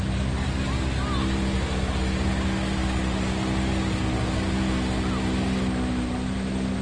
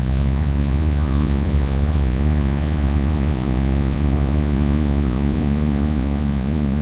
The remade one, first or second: second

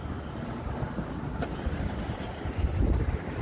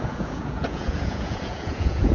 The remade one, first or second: second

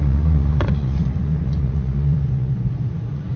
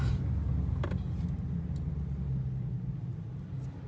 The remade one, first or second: first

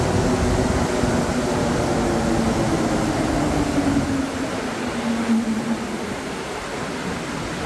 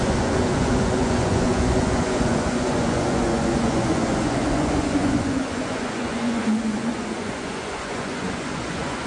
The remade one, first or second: second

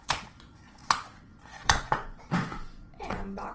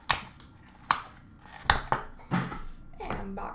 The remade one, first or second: first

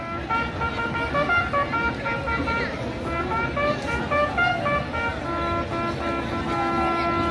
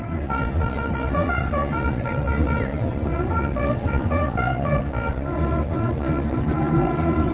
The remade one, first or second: second